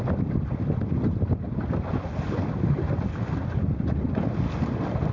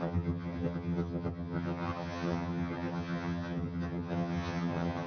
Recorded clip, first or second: first